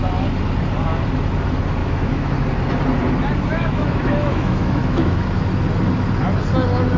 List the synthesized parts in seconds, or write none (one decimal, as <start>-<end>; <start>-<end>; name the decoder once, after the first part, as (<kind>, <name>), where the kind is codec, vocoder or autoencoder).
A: 1.8-2.3 (autoencoder, DAC-VAE); 3.5-5.3